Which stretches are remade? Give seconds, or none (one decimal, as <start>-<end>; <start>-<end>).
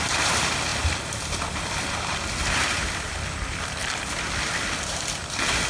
0.0-5.7